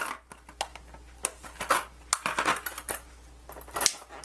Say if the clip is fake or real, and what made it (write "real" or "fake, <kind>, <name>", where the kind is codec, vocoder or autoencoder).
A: real